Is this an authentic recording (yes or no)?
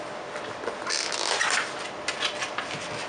yes